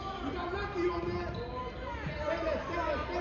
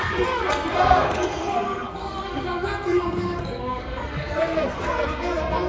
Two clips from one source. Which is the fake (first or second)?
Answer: second